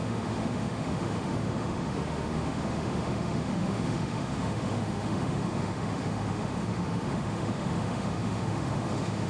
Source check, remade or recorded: remade